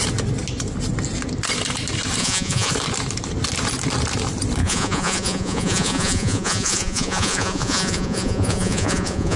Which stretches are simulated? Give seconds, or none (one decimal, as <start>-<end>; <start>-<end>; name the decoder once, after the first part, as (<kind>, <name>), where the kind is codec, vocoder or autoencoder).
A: 2.2-2.7 (vocoder, Vocos); 4.6-9.4